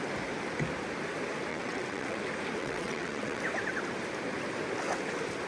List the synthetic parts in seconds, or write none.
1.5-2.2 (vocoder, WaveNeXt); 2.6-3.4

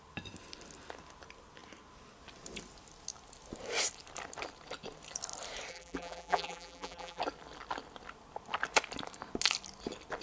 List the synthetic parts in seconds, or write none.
5.7-7.2 (vocoder, BigVGAN v2)